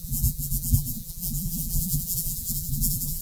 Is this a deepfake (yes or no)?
yes